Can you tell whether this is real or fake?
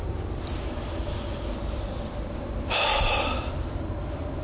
real